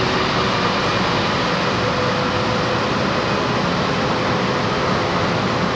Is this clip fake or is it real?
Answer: real